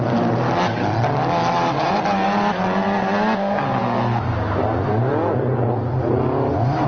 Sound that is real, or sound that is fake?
real